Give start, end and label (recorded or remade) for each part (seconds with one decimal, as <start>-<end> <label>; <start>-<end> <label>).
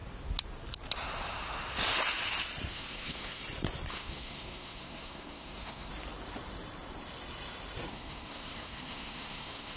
0.0-2.7 recorded; 2.7-3.4 remade; 3.4-3.9 recorded; 3.9-5.9 remade; 5.9-7.9 recorded; 7.9-9.8 remade